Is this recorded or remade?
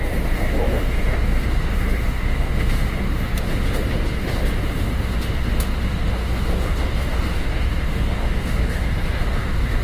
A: remade